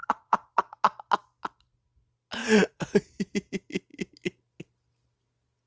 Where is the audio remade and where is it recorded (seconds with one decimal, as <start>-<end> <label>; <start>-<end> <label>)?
0.0-0.5 remade; 0.5-2.4 recorded; 2.4-3.2 remade; 3.2-5.7 recorded